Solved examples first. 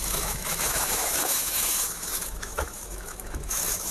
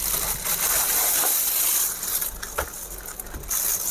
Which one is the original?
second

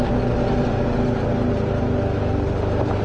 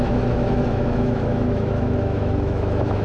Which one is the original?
first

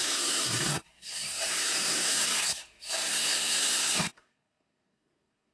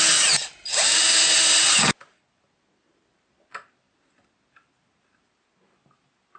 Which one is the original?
second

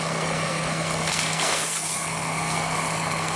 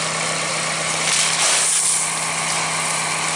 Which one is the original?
second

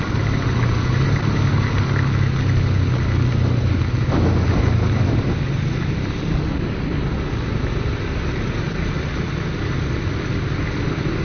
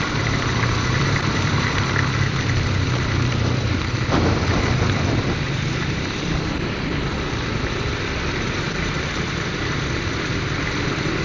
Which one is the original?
first